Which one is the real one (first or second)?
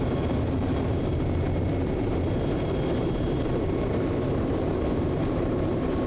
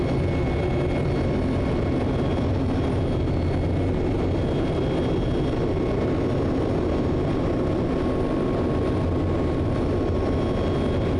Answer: second